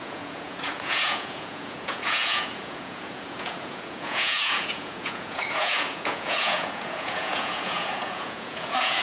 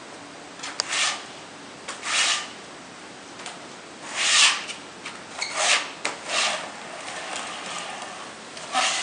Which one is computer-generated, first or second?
first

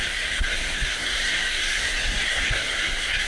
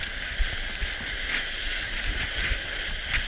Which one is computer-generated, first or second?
first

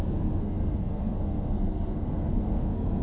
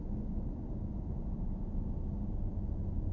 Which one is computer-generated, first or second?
first